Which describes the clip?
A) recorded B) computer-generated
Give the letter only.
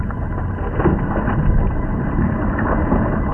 B